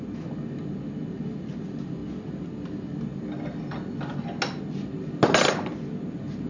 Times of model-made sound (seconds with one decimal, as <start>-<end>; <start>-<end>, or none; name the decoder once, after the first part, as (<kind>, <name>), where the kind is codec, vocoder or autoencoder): none